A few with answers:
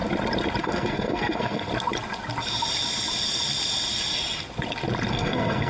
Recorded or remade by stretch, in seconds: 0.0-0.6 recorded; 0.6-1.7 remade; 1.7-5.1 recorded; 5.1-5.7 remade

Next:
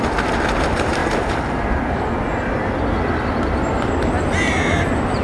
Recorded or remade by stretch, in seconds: 0.0-5.2 recorded

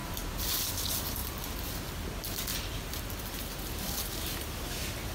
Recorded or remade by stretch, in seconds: 0.0-0.7 remade; 0.7-5.1 recorded

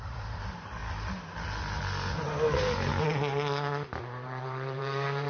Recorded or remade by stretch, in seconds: 0.0-0.8 remade; 0.8-4.0 recorded; 4.0-5.3 remade